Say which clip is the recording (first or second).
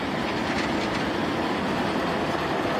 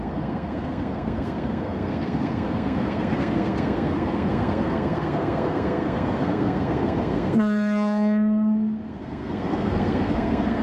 first